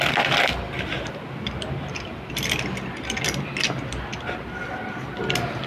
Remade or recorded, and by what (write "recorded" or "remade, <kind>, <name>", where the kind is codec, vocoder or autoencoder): recorded